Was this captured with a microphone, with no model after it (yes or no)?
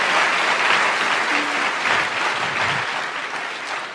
no